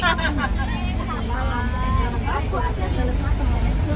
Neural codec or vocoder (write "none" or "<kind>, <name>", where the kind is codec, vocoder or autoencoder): none